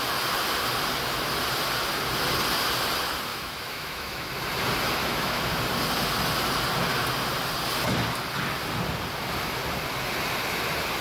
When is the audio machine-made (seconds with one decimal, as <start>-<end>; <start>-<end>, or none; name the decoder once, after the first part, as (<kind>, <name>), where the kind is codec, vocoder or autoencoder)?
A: 3.3-4.3 (autoencoder, DAC-VAE); 5.0-5.5